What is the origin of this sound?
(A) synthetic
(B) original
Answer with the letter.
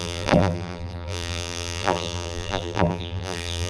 A